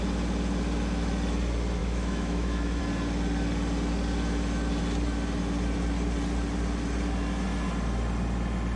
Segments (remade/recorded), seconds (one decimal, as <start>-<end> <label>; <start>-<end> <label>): 0.0-1.8 recorded; 1.8-2.8 remade; 2.8-8.8 recorded